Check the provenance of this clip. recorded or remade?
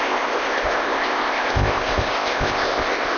remade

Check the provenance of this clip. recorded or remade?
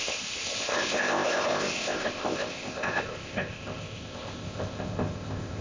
remade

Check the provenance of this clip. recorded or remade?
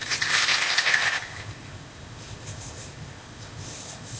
remade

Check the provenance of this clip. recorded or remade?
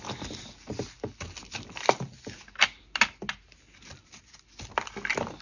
recorded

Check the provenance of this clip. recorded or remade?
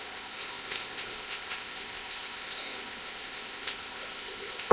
remade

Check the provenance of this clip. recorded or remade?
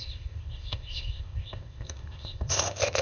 remade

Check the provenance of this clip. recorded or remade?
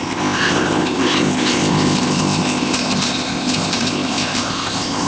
remade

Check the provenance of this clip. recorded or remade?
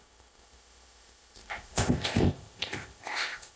remade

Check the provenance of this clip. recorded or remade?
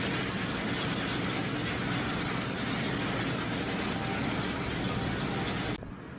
recorded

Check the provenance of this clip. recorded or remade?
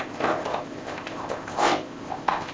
remade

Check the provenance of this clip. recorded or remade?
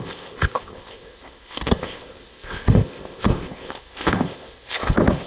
remade